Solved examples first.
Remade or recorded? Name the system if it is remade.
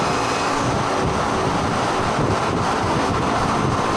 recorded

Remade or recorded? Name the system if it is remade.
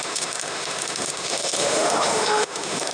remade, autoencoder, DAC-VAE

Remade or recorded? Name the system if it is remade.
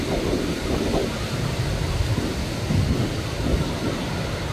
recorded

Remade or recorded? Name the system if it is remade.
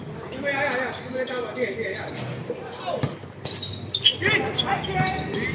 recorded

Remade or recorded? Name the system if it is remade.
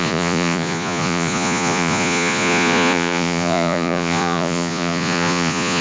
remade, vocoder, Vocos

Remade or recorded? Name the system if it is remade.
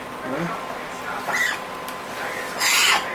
recorded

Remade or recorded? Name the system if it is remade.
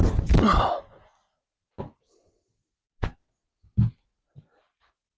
recorded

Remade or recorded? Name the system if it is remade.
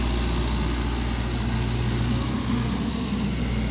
recorded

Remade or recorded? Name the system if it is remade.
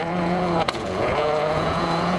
remade, vocoder, Vocos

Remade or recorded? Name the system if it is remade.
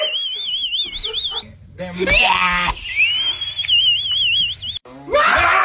recorded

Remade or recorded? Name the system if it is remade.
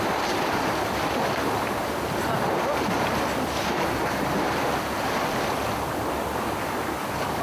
recorded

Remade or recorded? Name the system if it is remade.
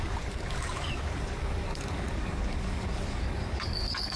remade, codec, DAC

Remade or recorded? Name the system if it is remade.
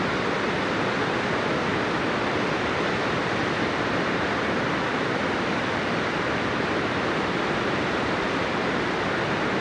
remade, vocoder, BigVGAN v2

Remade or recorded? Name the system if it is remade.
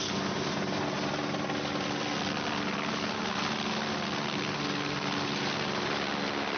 recorded